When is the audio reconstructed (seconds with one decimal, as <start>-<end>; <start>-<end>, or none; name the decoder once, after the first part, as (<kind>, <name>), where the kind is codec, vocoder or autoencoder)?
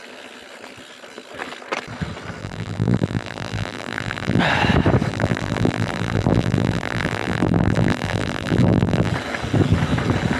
2.4-4.4 (vocoder, BigVGAN v2); 5.1-9.1